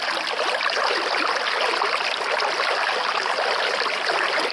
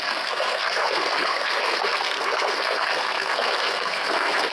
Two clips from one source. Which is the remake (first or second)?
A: second